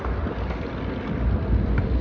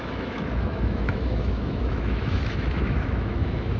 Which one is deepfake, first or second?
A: second